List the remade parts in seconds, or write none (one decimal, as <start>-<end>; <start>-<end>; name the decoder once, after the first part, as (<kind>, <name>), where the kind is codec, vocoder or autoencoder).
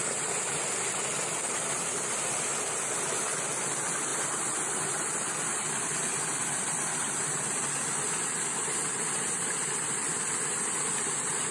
none